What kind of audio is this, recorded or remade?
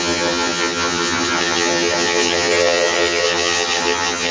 remade